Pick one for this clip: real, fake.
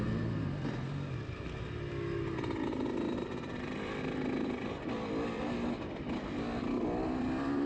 real